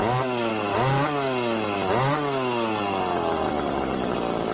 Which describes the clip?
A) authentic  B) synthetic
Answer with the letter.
A